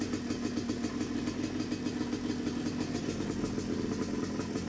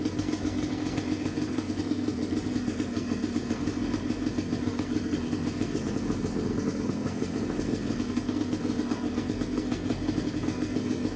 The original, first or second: first